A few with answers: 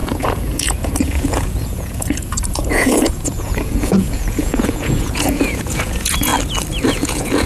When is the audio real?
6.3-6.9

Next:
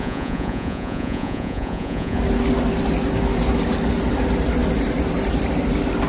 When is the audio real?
2.2-6.1

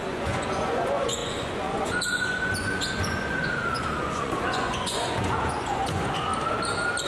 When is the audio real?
6.3-7.1

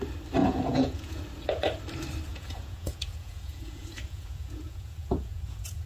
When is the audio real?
0.0-0.4; 1.2-2.3

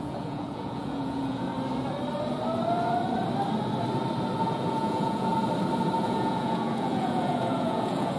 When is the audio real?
1.5-4.4; 5.3-6.0

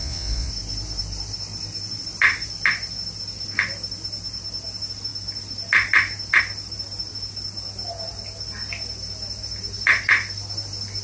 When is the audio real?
0.5-11.0

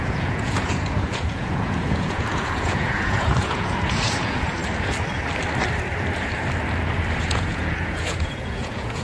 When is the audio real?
4.6-7.2

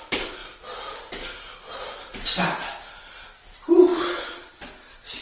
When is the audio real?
0.0-3.9